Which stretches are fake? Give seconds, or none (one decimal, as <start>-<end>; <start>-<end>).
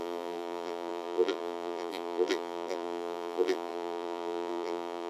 0.0-5.1